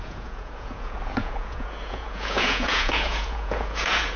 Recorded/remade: remade